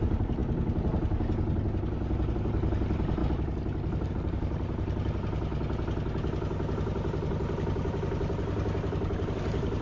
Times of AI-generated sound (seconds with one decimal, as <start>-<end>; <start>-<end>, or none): 0.0-0.4; 2.3-3.2; 4.1-5.5; 9.3-9.8

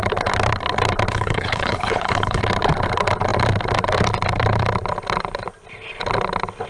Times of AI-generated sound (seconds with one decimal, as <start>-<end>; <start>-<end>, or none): 1.1-2.4

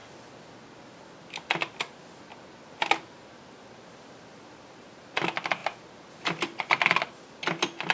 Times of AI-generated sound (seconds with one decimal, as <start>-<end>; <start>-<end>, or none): none